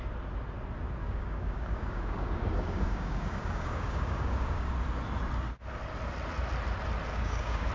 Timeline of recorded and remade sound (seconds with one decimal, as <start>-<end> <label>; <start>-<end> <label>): 0.0-1.0 recorded; 1.0-4.7 remade; 4.7-7.1 recorded; 7.1-7.7 remade

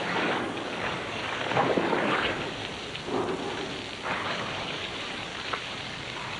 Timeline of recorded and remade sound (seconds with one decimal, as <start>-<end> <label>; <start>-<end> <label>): 0.0-2.6 remade; 2.6-4.1 recorded; 4.1-5.3 remade; 5.3-5.8 recorded; 5.8-6.4 remade

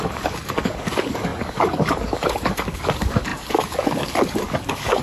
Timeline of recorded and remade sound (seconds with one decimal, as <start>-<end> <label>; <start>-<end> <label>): 0.0-5.0 remade

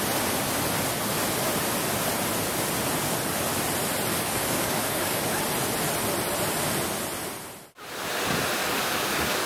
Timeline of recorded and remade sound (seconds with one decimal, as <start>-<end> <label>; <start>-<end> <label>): 0.0-4.1 recorded; 4.1-5.4 remade; 5.4-8.6 recorded; 8.6-9.5 remade

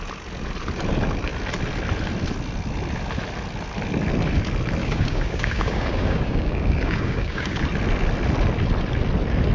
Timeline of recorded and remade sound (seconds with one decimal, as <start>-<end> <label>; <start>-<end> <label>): 0.0-4.8 recorded; 4.8-7.6 remade; 7.6-9.5 recorded

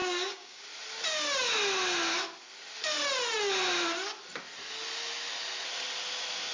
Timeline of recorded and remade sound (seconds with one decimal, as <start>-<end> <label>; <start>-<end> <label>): 0.0-0.6 remade; 0.6-6.5 recorded